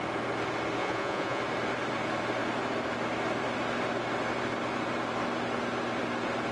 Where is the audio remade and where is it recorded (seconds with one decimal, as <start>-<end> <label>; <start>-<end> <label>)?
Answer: 0.0-0.8 recorded; 0.8-1.4 remade; 1.4-6.5 recorded